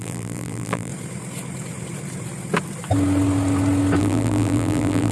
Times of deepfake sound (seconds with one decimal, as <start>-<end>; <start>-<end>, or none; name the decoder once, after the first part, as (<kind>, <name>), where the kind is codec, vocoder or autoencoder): 0.0-0.9 (vocoder, BigVGAN v2); 4.0-5.1